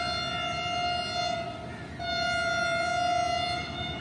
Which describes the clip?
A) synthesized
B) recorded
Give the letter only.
B